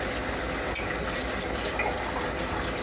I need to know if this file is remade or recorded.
recorded